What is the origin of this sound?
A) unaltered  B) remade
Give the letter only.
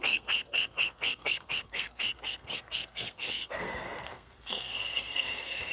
B